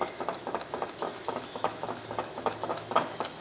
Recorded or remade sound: remade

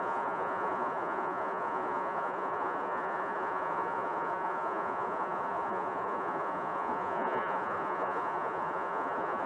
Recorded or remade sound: remade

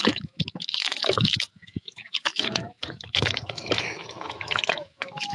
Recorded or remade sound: remade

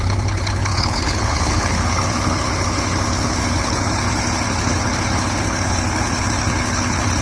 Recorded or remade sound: remade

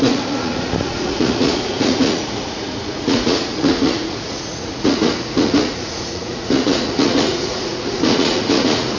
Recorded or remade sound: remade